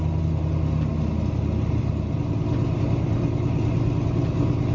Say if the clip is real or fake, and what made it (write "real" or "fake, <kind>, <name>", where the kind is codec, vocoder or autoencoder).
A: real